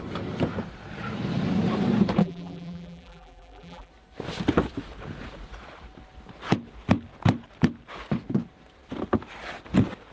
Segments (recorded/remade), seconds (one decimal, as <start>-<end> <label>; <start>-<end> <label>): 0.0-2.2 recorded; 2.2-3.9 remade; 3.9-10.1 recorded